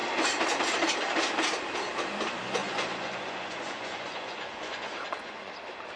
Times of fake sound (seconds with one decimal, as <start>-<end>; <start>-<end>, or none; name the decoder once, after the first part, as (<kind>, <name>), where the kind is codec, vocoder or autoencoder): 2.6-5.5 (vocoder, Vocos)